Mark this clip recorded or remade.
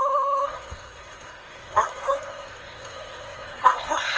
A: remade